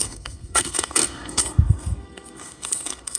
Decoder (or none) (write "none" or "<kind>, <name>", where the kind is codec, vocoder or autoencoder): codec, SNAC